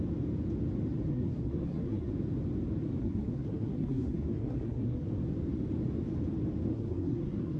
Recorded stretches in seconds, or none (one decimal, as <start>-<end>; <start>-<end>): 0.0-1.1; 2.1-3.0; 5.1-6.7

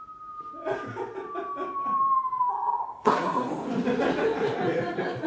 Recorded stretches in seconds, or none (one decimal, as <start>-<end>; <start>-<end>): 0.0-2.5; 3.5-5.3